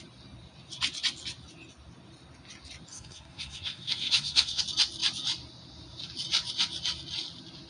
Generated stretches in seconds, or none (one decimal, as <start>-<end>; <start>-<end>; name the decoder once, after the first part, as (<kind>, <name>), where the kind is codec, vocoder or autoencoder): 2.9-4.6 (codec, SNAC)